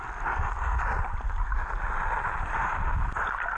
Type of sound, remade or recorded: recorded